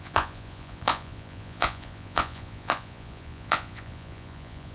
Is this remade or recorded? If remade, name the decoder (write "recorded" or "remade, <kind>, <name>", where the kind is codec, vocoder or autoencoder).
remade, vocoder, Vocos